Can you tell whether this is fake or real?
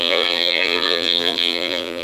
fake